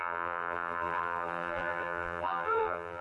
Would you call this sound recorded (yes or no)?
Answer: no